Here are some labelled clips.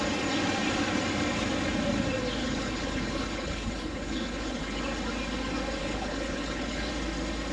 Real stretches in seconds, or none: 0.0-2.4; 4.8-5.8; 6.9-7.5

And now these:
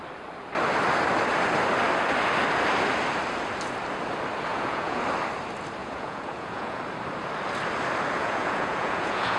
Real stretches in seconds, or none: 0.0-4.5; 5.0-5.8; 6.8-8.2